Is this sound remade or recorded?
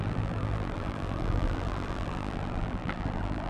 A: remade